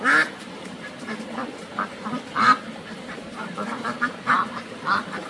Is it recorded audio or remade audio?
remade